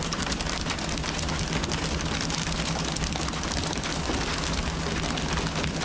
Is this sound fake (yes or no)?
no